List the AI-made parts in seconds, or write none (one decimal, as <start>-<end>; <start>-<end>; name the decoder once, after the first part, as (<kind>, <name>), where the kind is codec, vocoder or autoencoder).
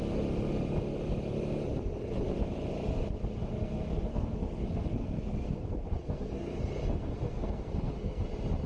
3.4-8.2 (codec, SNAC)